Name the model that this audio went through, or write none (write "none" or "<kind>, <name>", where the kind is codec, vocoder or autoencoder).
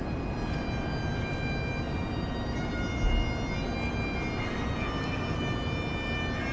none